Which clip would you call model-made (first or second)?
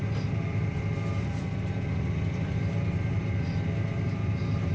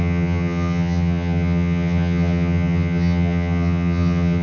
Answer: second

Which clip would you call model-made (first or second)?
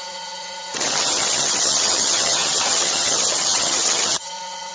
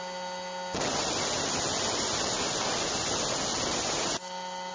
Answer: first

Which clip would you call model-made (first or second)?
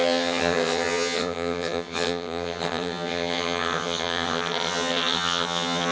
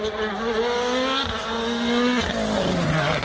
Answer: first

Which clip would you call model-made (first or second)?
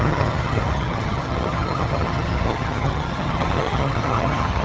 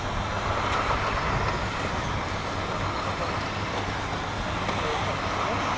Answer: first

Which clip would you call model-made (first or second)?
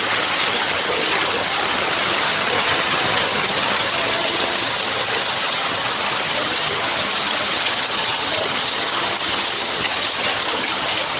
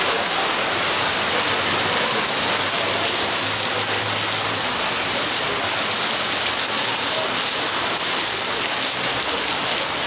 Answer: first